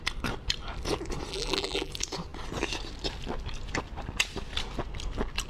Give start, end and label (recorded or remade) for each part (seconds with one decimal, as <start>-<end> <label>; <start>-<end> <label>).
0.0-1.3 recorded; 1.3-1.9 remade; 1.9-5.5 recorded